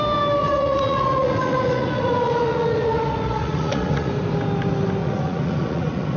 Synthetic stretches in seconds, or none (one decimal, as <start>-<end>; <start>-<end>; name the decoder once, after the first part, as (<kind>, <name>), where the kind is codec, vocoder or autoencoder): 0.4-4.1 (vocoder, Vocos); 5.0-6.2